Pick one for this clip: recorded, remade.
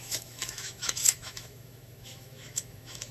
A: remade